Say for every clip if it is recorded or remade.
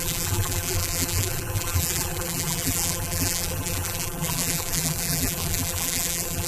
remade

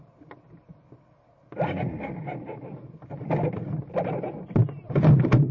remade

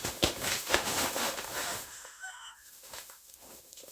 remade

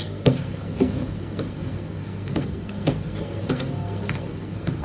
remade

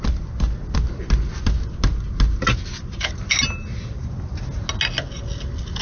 recorded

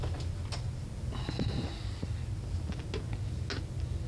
recorded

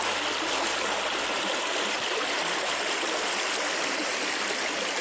recorded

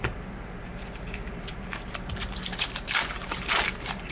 remade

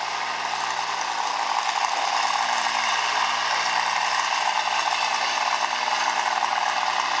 recorded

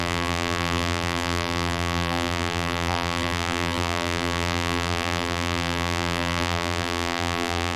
remade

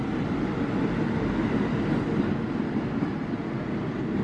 recorded